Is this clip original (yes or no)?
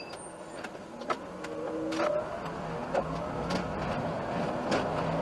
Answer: yes